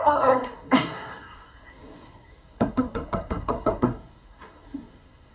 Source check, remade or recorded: remade